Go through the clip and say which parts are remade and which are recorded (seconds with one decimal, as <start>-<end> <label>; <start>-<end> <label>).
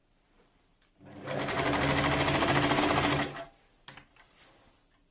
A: 0.0-5.1 recorded